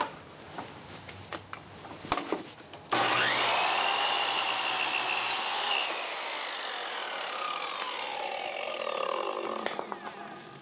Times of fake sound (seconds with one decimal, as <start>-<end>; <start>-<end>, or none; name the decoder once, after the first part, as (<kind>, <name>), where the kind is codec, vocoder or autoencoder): none